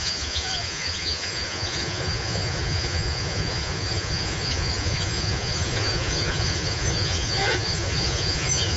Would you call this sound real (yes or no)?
no